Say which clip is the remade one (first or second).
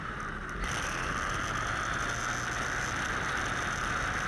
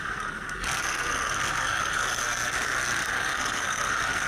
second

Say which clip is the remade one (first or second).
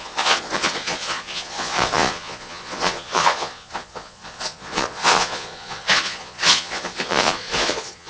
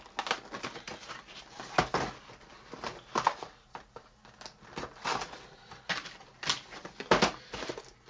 first